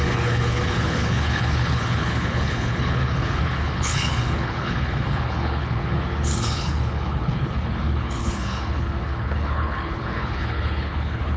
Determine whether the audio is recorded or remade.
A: remade